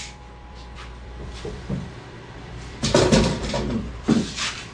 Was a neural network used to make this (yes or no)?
yes